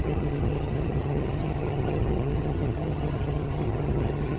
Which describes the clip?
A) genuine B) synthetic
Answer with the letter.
B